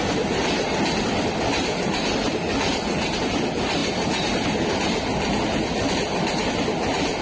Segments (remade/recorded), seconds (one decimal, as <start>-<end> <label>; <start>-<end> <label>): 0.0-7.2 recorded

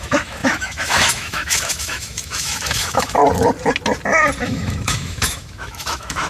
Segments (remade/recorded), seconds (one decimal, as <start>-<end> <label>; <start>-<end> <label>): 0.0-3.2 remade; 3.2-4.4 recorded; 4.4-6.3 remade